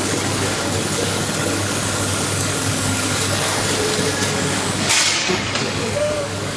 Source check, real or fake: fake